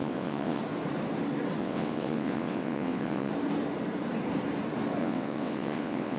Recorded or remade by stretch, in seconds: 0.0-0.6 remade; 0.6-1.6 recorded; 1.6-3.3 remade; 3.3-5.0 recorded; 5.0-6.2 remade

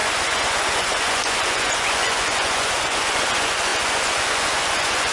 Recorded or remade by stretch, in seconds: 0.0-5.1 remade

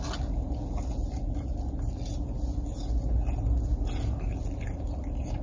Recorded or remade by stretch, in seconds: 0.0-5.4 recorded